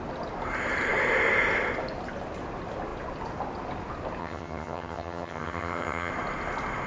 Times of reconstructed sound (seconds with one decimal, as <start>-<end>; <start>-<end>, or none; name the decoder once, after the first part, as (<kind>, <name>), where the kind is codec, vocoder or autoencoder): 4.2-6.1 (vocoder, HiFi-GAN)